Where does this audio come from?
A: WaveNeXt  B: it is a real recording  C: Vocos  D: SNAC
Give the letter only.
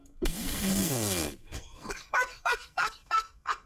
D